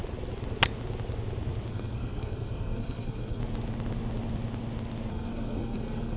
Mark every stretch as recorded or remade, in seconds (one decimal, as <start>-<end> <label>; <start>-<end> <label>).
0.0-1.7 recorded; 1.7-3.4 remade; 3.4-5.1 recorded; 5.1-6.2 remade